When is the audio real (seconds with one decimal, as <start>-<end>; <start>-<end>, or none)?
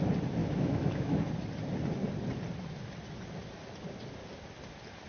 0.0-0.4; 1.2-5.1